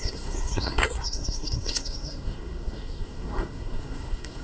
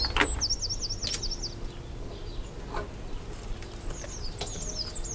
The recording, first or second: second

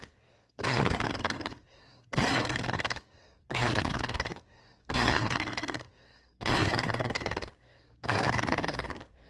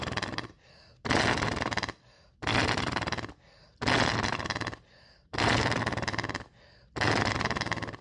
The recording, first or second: second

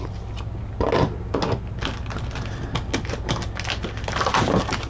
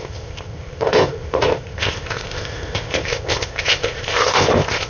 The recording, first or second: first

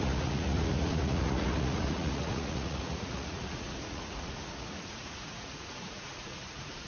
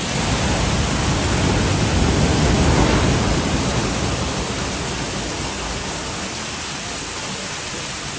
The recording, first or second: second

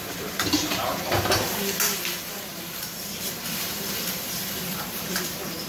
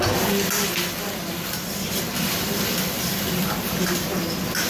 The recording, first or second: second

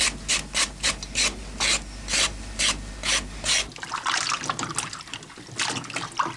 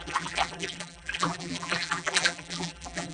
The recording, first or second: first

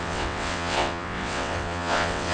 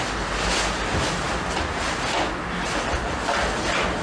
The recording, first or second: second